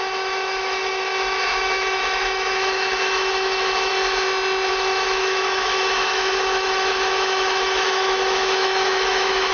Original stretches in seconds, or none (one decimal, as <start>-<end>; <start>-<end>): 3.9-4.7